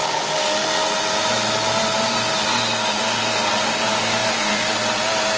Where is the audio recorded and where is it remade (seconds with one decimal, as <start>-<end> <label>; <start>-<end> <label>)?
0.0-5.4 recorded